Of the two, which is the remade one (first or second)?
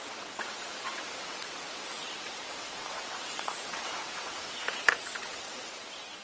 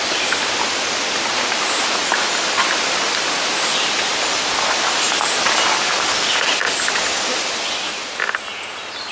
first